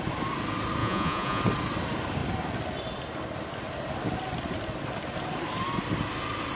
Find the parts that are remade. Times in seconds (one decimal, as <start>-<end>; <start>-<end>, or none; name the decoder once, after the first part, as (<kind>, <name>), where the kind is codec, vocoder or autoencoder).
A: 0.8-1.4 (vocoder, Vocos)